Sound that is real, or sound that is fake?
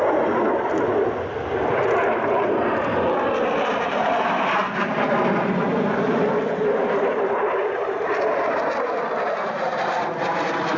real